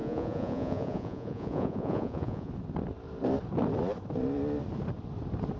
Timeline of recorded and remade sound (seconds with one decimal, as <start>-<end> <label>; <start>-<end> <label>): 0.0-2.5 remade; 2.5-5.6 recorded

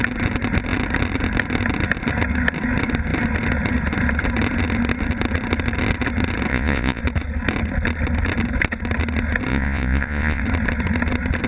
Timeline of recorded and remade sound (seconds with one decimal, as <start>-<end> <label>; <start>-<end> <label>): 0.0-6.5 recorded; 6.5-7.0 remade; 7.0-9.5 recorded; 9.5-10.4 remade; 10.4-11.5 recorded

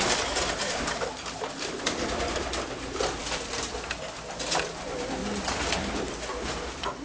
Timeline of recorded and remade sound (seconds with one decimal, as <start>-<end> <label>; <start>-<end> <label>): 0.0-7.0 recorded

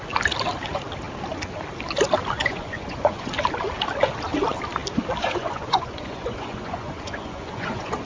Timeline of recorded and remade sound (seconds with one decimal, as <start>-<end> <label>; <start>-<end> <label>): 0.0-2.4 recorded; 2.4-3.3 remade; 3.3-5.2 recorded; 5.2-8.0 remade

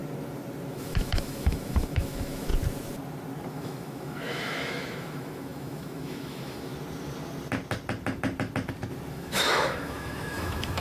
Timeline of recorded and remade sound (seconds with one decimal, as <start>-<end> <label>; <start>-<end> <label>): 0.0-0.7 recorded; 0.7-2.5 remade; 2.5-3.5 recorded; 3.5-6.7 remade; 6.7-9.1 recorded; 9.1-10.8 remade

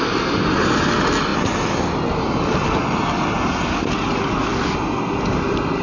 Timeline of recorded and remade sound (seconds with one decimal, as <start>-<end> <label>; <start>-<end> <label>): 0.0-5.8 recorded

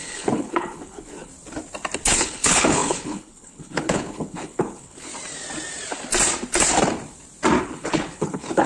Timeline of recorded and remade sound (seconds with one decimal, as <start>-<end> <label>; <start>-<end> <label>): 0.0-1.3 remade; 1.3-2.1 recorded; 2.1-5.1 remade; 5.1-7.6 recorded; 7.6-8.7 remade

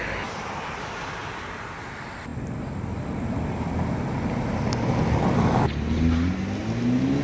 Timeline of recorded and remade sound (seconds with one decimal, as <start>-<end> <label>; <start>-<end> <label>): 0.0-7.2 recorded